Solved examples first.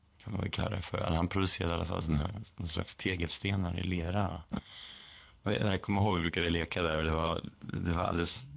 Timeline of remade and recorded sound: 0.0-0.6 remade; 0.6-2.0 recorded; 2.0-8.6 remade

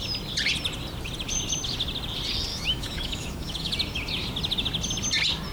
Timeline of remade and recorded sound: 0.0-2.5 recorded; 2.5-3.7 remade; 3.7-5.5 recorded

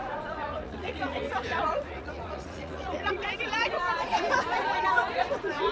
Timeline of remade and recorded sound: 0.0-5.7 remade

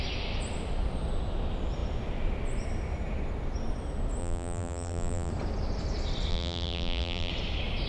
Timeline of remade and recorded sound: 0.0-4.2 recorded; 4.2-5.3 remade; 5.3-6.3 recorded; 6.3-7.3 remade; 7.3-7.9 recorded

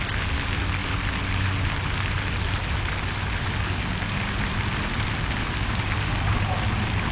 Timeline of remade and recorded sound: 0.0-7.1 recorded

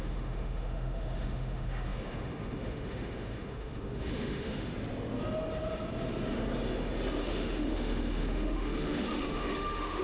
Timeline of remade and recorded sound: 0.0-4.7 remade; 4.7-7.2 recorded; 7.2-10.0 remade